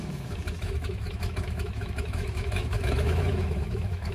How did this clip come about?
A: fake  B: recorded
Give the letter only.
A